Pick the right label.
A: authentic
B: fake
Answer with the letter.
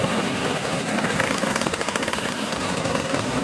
B